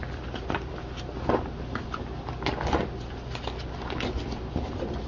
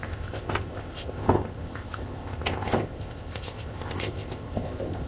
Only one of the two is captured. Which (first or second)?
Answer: first